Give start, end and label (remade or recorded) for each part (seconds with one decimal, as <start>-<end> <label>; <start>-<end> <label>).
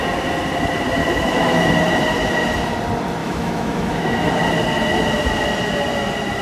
0.0-1.0 recorded; 1.0-1.7 remade; 1.7-3.2 recorded; 3.2-4.3 remade; 4.3-6.4 recorded